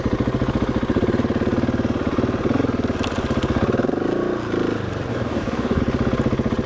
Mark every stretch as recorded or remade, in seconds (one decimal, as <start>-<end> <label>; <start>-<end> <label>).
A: 0.0-5.1 recorded; 5.1-5.8 remade; 5.8-6.7 recorded